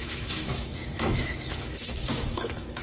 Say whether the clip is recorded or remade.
remade